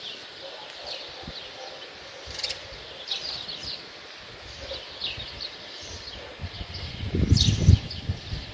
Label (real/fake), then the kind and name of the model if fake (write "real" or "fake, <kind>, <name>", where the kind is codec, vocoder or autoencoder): real